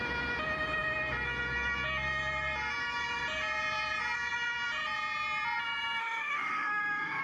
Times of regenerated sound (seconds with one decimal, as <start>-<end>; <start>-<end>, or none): 6.0-7.2